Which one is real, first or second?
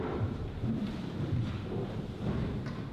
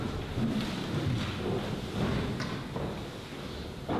second